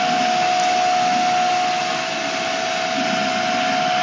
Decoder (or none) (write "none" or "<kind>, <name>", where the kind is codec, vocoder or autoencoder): none